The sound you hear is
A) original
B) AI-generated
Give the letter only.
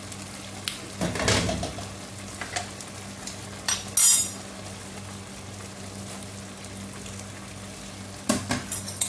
A